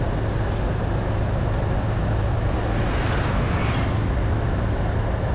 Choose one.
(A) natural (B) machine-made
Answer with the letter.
A